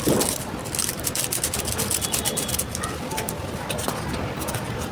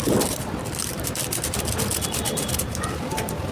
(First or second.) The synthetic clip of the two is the second